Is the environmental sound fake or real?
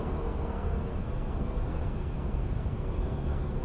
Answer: fake